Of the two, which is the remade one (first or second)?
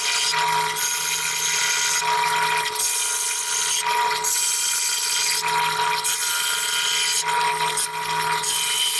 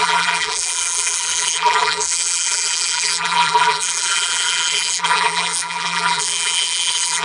second